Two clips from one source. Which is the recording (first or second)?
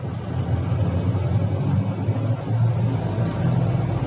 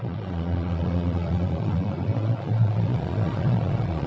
first